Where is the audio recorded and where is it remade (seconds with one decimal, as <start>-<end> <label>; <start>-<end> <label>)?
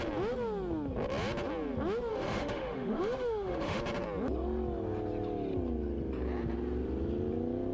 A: 0.0-2.1 recorded; 2.1-3.8 remade; 3.8-7.7 recorded